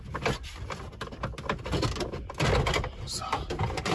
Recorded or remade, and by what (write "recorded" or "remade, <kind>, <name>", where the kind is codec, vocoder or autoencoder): recorded